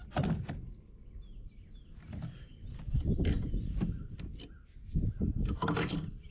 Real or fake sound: real